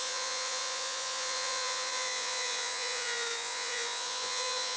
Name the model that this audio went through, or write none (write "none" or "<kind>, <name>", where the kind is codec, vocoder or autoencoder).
vocoder, Vocos